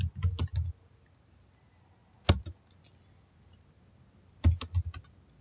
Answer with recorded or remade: recorded